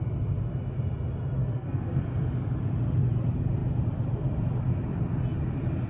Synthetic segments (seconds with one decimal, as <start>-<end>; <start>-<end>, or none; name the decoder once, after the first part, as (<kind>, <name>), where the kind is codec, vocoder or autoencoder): 1.4-2.0 (codec, SNAC)